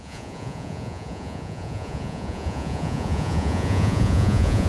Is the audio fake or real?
fake